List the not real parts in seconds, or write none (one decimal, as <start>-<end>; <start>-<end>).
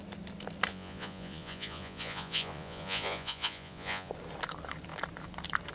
0.7-4.1